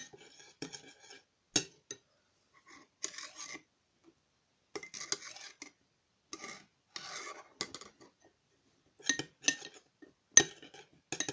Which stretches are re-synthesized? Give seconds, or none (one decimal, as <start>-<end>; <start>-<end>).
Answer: 0.0-0.7